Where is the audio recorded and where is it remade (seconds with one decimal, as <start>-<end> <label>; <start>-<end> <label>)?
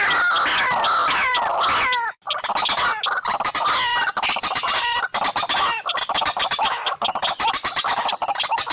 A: 0.0-8.7 recorded